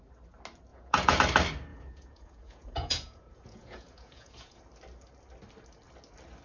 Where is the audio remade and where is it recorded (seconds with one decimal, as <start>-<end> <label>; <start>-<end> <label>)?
0.0-0.7 recorded; 0.7-1.2 remade; 1.2-1.7 recorded; 1.7-4.6 remade; 4.6-6.4 recorded

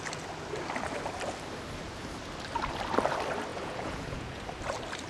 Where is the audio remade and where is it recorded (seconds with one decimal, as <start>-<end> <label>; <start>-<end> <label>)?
0.0-3.5 recorded; 3.5-4.4 remade; 4.4-5.1 recorded

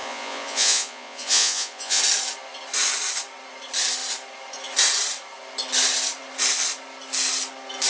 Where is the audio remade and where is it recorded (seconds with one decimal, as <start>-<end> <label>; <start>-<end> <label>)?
0.0-2.0 remade; 2.0-7.9 recorded

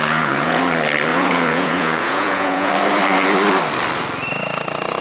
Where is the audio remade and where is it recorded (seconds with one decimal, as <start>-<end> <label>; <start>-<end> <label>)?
0.0-0.6 remade; 0.6-1.1 recorded; 1.1-2.7 remade; 2.7-5.0 recorded

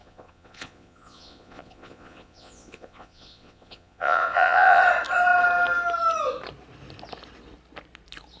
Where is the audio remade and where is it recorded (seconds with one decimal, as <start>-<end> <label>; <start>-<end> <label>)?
0.0-4.8 remade; 4.8-8.4 recorded

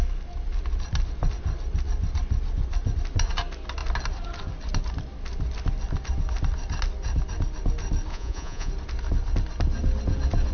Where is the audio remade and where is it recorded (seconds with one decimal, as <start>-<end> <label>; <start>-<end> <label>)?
0.0-8.1 recorded; 8.1-8.7 remade; 8.7-10.5 recorded

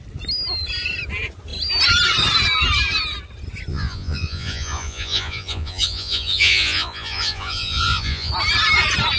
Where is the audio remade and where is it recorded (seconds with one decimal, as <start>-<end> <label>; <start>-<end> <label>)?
0.0-3.7 recorded; 3.7-8.3 remade; 8.3-9.2 recorded

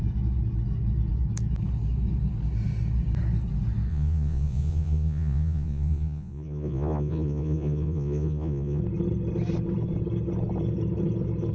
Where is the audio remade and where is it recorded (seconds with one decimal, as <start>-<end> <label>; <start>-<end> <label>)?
0.0-3.9 recorded; 3.9-8.8 remade; 8.8-11.5 recorded